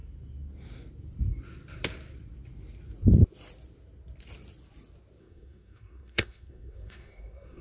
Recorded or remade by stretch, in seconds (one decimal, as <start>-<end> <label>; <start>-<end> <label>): 0.0-5.2 recorded; 5.2-7.6 remade